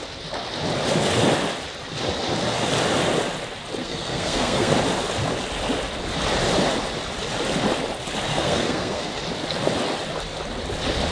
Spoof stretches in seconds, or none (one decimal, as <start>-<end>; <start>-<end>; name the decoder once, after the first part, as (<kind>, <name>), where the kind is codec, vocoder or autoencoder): 3.8-4.7 (codec, SNAC); 8.3-9.1

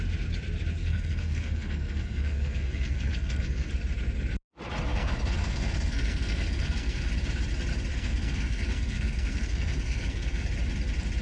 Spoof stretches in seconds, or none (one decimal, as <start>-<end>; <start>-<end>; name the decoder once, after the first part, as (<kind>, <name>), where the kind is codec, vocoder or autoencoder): 0.8-3.7 (codec, SNAC); 4.9-7.1; 7.9-10.5